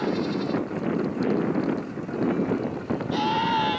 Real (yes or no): yes